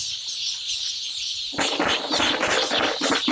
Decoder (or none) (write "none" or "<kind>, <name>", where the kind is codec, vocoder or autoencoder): none